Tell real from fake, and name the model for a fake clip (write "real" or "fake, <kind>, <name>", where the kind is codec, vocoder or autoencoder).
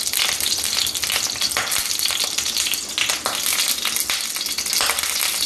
real